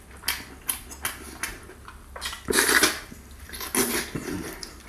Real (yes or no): yes